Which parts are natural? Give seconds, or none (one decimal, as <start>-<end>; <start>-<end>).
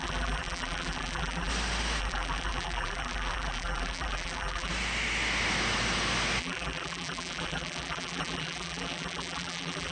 1.5-2.0; 4.7-6.4